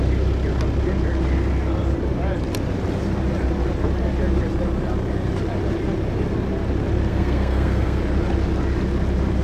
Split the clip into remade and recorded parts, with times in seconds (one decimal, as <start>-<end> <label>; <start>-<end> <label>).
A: 0.0-7.1 recorded; 7.1-8.0 remade; 8.0-9.4 recorded